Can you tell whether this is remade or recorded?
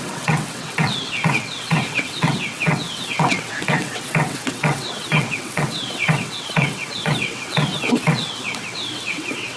remade